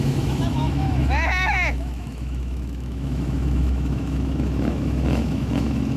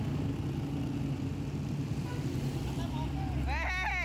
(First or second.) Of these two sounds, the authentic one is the second